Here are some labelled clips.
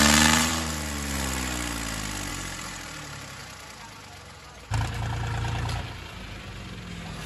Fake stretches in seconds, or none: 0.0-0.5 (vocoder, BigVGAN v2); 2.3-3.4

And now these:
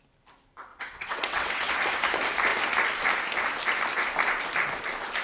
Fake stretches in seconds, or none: 0.7-1.7 (vocoder, WaveNeXt)

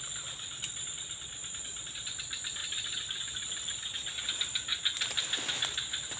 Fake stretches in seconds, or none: 2.6-3.2 (vocoder, BigVGAN v2)

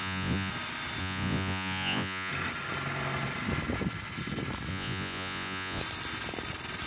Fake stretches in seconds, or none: 0.0-0.5 (vocoder, Vocos); 1.0-2.3; 4.7-5.8

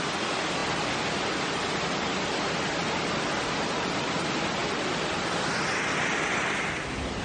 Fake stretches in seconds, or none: none

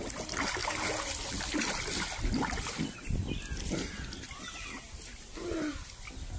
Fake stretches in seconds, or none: none